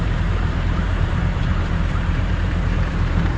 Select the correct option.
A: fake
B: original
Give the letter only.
A